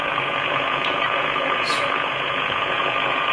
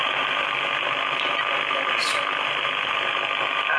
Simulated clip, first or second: first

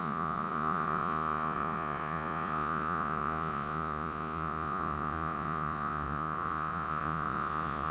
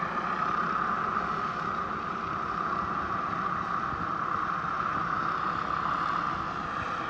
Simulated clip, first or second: first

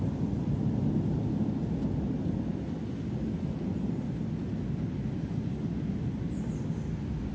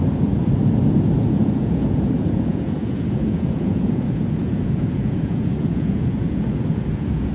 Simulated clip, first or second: second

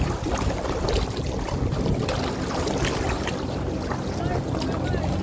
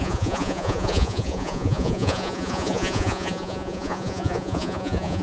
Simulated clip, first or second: second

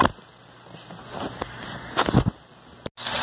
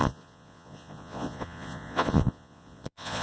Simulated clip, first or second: second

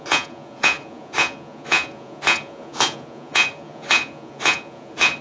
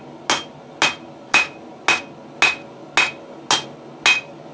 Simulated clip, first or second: first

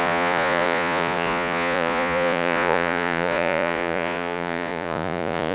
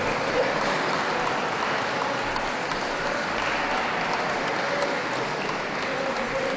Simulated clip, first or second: first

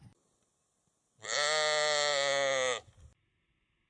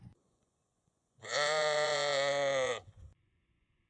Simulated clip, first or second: second